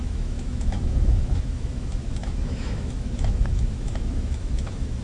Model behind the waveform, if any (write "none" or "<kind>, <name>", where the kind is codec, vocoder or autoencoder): autoencoder, DAC-VAE